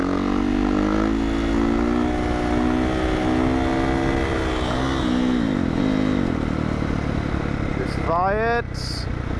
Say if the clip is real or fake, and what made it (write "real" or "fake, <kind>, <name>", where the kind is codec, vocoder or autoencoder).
real